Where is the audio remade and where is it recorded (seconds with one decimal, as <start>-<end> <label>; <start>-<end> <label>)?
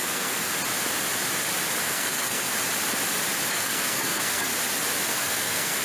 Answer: 0.0-0.5 remade; 0.5-1.8 recorded; 1.8-2.5 remade; 2.5-3.5 recorded; 3.5-4.5 remade; 4.5-5.1 recorded; 5.1-5.8 remade